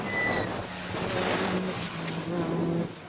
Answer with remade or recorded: recorded